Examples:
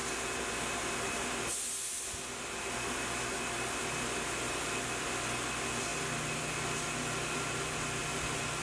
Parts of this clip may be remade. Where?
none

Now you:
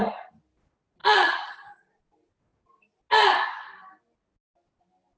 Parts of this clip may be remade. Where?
1.0-2.1